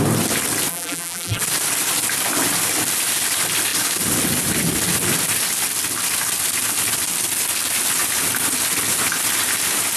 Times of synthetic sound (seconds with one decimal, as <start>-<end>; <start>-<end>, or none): 0.7-1.4